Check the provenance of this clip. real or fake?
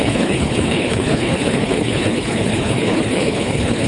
fake